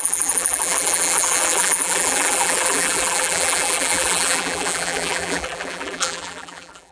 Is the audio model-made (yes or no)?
yes